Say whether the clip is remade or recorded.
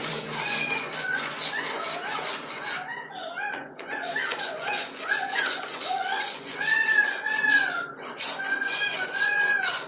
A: remade